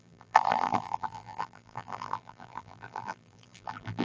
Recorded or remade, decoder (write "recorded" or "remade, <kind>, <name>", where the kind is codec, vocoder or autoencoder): remade, vocoder, BigVGAN v2